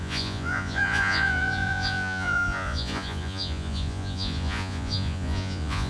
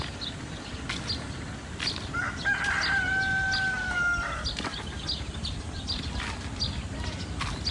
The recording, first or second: second